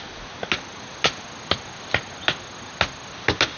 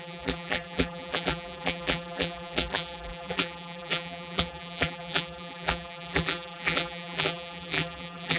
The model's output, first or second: second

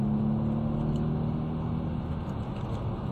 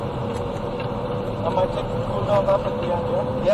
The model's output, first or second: second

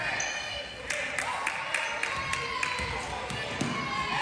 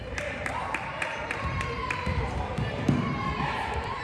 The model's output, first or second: second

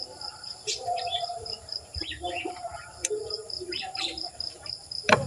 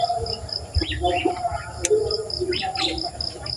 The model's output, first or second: first